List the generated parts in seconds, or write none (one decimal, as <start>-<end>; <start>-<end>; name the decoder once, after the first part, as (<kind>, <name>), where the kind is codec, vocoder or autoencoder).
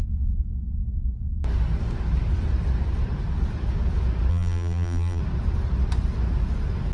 4.3-5.2 (vocoder, BigVGAN v2)